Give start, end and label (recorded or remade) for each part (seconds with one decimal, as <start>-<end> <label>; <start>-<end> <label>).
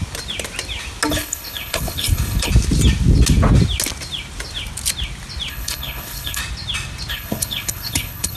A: 0.0-1.1 recorded; 1.1-2.5 remade; 2.5-5.5 recorded; 5.5-6.4 remade; 6.4-7.1 recorded; 7.1-8.4 remade